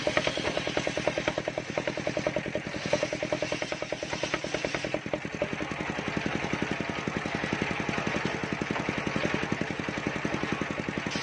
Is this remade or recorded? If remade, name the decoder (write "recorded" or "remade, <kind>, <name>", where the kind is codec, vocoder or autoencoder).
recorded